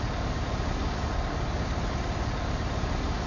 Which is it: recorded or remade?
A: recorded